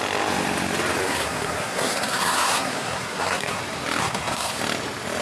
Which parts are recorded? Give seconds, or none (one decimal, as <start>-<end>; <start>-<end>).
0.0-1.0; 3.6-4.0; 4.6-5.2

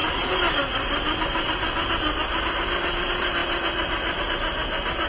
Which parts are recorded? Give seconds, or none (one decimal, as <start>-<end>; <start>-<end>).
0.0-5.1

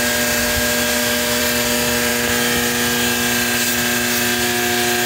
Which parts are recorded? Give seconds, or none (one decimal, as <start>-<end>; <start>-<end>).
0.0-0.4; 1.4-5.1

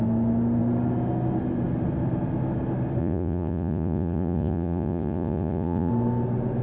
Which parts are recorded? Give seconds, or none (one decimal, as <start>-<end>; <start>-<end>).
0.0-3.0; 5.9-6.6

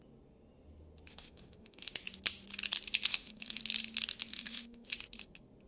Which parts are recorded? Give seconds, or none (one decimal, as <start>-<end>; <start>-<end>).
0.0-1.1; 1.9-3.1; 3.6-4.3; 4.9-5.7

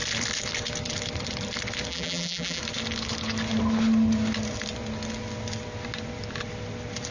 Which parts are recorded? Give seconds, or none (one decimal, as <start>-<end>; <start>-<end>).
0.0-1.9; 2.6-7.1